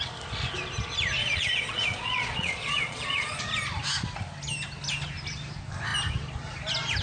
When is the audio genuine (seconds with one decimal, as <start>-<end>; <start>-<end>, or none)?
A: 0.0-1.2; 3.4-7.0